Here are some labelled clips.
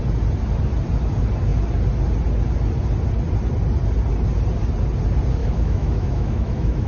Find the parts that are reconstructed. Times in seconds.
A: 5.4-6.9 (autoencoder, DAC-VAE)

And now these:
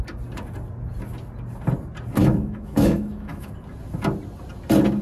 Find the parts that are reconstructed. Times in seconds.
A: 2.2-3.5 (autoencoder, DAC-VAE)

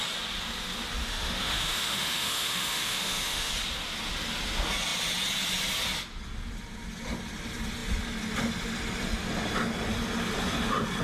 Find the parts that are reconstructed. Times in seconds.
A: 1.0-3.5 (autoencoder, DAC-VAE)

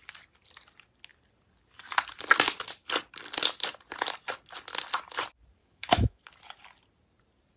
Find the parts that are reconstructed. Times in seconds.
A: 5.6-6.2 (autoencoder, DAC-VAE)